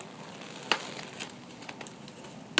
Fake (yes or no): no